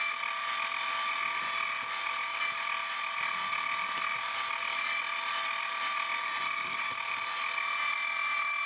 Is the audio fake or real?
real